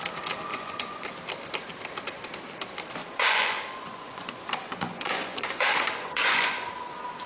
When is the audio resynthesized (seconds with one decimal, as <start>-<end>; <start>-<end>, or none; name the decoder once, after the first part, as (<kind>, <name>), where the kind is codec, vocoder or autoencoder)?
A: 0.5-1.1 (vocoder, Vocos); 3.0-6.7